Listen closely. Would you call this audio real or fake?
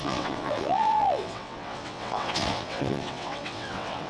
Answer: fake